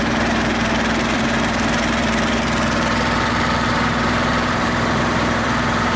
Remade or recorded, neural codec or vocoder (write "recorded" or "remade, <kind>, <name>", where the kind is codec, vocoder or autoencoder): remade, vocoder, BigVGAN v2